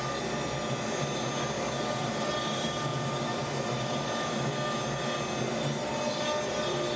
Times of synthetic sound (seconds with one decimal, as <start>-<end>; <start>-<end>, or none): none